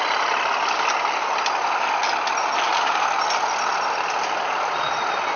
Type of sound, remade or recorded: recorded